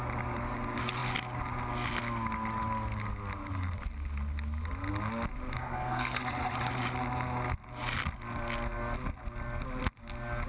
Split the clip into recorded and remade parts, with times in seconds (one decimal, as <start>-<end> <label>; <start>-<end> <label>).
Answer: 0.0-5.6 recorded; 5.6-6.2 remade; 6.2-10.5 recorded